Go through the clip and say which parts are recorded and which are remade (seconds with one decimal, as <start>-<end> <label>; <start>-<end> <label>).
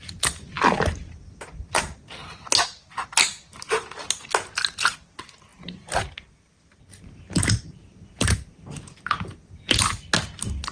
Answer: 0.0-10.7 recorded